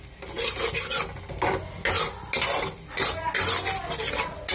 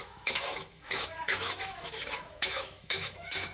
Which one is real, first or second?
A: first